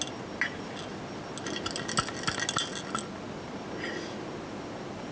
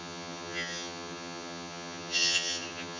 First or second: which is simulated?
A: second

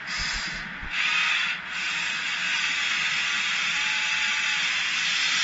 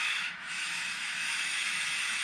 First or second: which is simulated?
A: second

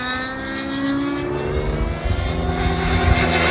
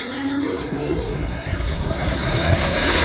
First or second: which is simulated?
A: second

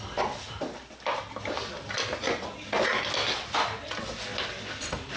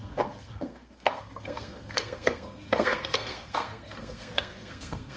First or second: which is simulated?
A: second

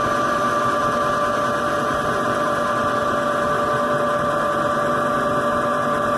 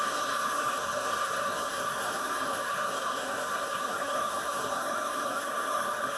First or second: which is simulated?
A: second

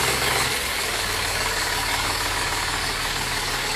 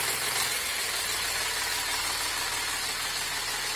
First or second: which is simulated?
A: first